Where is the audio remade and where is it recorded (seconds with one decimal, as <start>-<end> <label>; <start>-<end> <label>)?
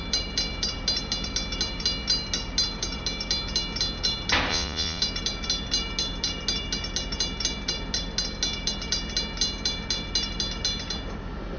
0.0-4.5 recorded; 4.5-5.0 remade; 5.0-11.6 recorded